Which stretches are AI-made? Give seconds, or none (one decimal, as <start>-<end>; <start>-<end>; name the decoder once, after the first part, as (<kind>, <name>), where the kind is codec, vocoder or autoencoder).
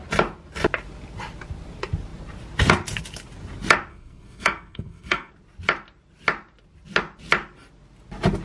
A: 3.9-5.3 (codec, SNAC)